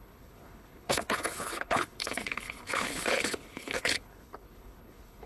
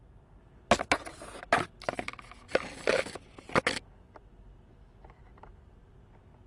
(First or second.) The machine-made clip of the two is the first